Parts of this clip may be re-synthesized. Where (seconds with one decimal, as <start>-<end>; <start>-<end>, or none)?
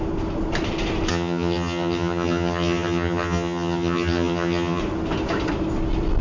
1.1-4.8